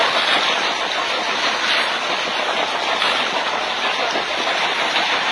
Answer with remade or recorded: recorded